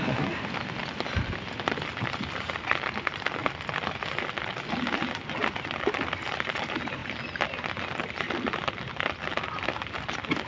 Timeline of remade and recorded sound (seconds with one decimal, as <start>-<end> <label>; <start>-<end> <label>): 0.0-10.5 recorded